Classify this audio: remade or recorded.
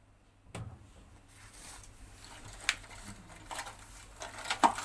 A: recorded